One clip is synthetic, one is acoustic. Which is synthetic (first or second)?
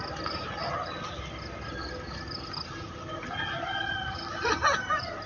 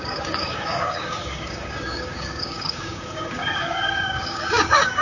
second